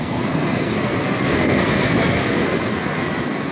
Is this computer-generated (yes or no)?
yes